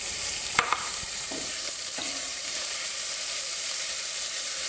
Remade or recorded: remade